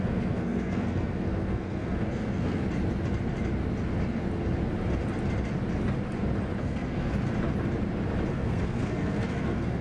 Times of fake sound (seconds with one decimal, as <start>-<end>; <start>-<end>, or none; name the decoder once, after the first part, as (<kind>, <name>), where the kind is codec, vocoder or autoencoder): 0.0-2.6 (codec, SNAC); 6.6-7.1; 8.3-9.8